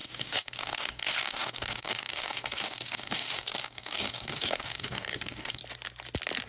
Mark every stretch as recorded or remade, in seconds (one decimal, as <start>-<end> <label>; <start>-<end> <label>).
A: 0.0-5.6 remade; 5.6-6.5 recorded